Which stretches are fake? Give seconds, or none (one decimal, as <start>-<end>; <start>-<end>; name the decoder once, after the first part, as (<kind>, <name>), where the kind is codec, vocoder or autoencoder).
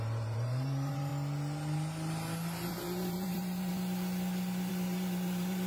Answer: 0.0-1.1 (vocoder, BigVGAN v2); 2.7-3.7; 4.7-5.7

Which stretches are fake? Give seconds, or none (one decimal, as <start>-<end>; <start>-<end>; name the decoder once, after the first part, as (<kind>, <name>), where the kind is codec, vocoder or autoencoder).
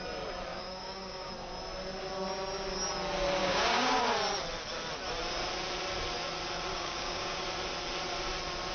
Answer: 0.5-1.3 (codec, DAC); 3.4-4.0; 6.7-7.4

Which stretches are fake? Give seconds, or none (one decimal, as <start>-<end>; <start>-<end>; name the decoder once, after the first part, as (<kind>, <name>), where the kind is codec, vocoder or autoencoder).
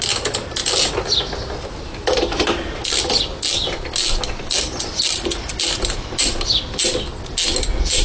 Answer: none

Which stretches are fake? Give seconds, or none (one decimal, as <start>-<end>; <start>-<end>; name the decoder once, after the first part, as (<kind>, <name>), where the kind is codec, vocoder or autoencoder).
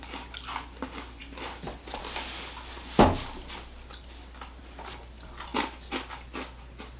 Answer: none